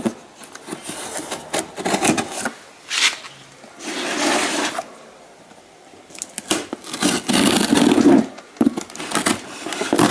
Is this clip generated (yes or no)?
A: no